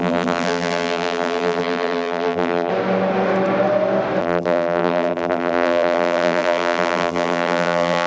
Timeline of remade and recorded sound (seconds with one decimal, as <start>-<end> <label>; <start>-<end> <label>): 0.0-2.7 remade; 2.7-4.2 recorded; 4.2-8.1 remade